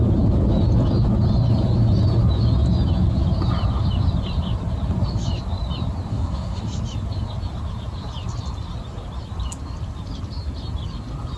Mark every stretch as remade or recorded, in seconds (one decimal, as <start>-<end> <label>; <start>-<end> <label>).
0.0-6.1 recorded; 6.1-6.6 remade; 6.6-11.4 recorded

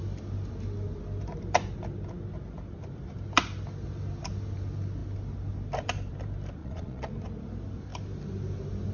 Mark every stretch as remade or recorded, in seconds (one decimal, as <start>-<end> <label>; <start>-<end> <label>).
0.0-6.6 recorded; 6.6-7.1 remade; 7.1-8.9 recorded